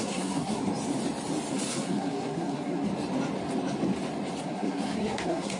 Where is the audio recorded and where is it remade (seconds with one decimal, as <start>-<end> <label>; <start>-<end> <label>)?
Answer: 0.0-0.7 remade; 0.7-1.7 recorded; 1.7-2.9 remade; 2.9-4.4 recorded; 4.4-5.6 remade